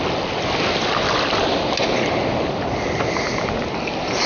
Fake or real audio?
real